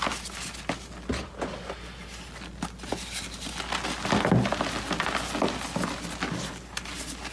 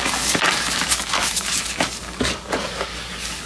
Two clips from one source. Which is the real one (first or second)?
first